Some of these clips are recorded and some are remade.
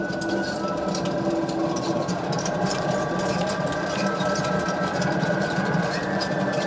remade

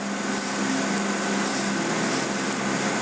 recorded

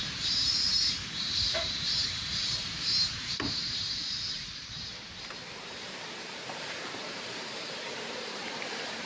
remade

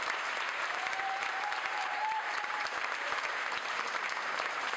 remade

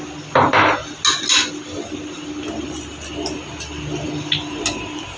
recorded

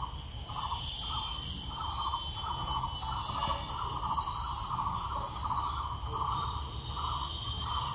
recorded